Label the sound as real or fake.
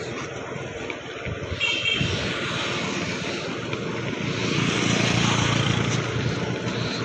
real